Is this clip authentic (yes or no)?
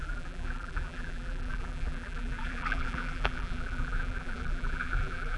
no